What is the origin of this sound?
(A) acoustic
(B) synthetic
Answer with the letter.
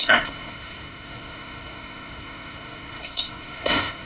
B